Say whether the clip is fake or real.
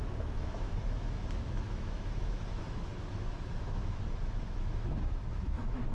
fake